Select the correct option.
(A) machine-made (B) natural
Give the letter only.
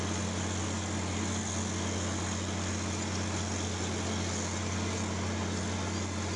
B